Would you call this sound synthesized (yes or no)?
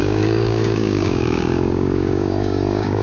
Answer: yes